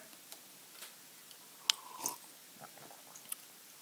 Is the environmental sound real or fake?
real